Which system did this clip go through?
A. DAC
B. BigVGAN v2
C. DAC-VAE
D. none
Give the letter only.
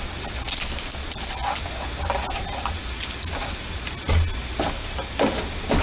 D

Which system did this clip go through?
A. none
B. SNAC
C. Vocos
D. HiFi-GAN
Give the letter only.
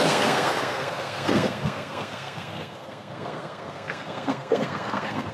B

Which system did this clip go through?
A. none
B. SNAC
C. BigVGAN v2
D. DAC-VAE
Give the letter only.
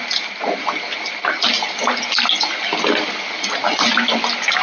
A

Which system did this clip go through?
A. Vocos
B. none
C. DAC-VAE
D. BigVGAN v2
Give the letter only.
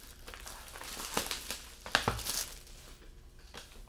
B